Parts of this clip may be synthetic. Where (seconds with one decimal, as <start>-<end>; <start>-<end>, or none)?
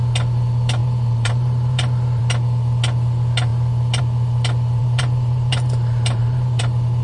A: 0.8-2.2; 4.8-6.6